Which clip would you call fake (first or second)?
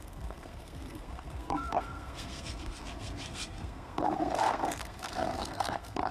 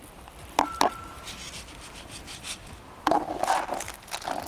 first